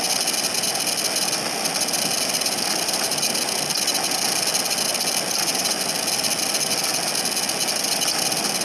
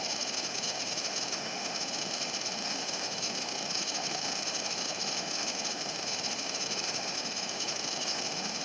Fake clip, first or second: second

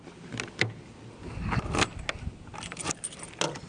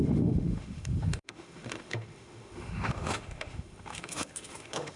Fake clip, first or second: second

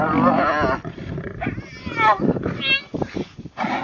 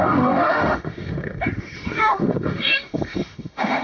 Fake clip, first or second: second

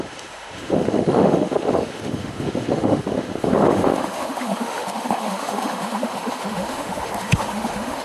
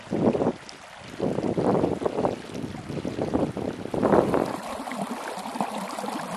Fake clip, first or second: first